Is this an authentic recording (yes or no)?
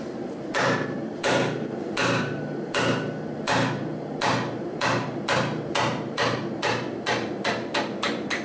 no